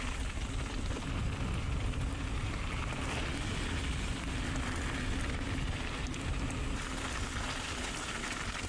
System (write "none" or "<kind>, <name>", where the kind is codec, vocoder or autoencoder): none